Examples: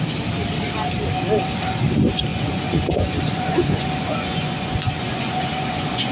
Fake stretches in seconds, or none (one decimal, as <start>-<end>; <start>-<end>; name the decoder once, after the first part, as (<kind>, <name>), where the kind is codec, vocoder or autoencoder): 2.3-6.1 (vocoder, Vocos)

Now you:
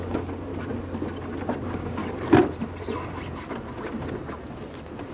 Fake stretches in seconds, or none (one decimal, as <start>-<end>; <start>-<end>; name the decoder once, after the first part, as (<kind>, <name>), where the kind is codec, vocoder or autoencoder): 0.0-0.5 (codec, DAC); 1.6-2.0

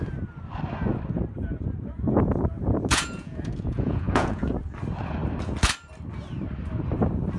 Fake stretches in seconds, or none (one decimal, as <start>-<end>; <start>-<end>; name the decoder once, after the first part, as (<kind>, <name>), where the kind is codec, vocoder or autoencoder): 2.9-4.5 (vocoder, Vocos)

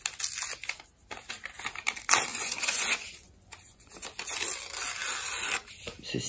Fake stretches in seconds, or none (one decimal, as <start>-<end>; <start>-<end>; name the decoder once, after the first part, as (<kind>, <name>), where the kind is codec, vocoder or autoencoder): 2.3-3.9 (vocoder, Vocos)

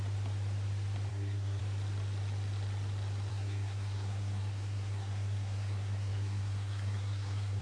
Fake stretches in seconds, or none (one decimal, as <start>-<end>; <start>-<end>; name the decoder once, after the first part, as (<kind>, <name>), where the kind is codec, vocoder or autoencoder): 1.1-1.6 (codec, SNAC); 3.3-7.6

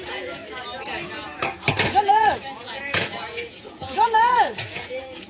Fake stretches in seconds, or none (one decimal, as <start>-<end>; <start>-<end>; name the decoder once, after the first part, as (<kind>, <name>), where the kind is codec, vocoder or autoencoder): 0.0-0.4 (vocoder, Vocos); 2.1-5.3

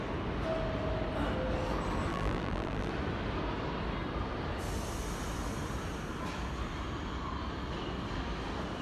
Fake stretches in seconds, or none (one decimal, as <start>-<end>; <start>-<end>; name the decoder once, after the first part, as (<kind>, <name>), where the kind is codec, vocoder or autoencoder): 2.1-2.9 (vocoder, BigVGAN v2)

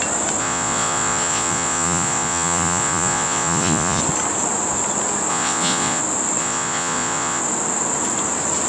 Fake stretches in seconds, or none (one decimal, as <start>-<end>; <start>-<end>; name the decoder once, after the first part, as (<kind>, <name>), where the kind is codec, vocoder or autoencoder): 0.4-4.0 (vocoder, Vocos); 5.3-6.0; 6.4-7.4